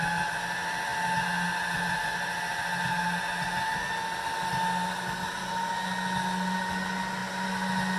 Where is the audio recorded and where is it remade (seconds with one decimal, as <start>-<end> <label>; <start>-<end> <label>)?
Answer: 0.0-8.0 recorded